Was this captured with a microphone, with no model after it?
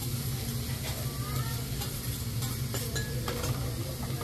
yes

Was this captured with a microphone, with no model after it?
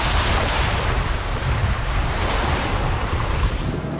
no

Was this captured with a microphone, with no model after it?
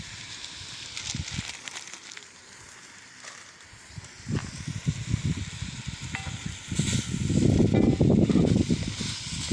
yes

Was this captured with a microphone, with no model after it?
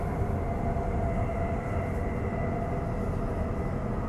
yes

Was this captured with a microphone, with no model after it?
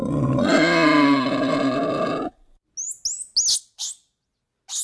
yes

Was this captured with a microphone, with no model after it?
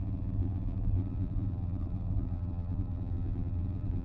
no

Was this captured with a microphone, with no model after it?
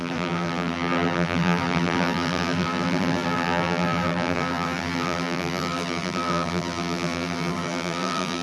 no